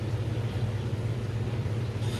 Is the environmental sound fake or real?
fake